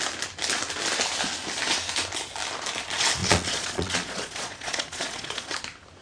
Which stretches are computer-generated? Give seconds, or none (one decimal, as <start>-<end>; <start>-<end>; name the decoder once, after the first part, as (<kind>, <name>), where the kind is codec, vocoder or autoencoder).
3.2-5.5 (vocoder, Vocos)